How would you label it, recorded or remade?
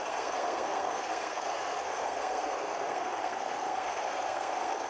remade